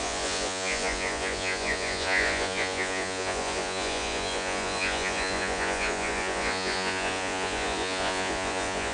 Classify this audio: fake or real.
fake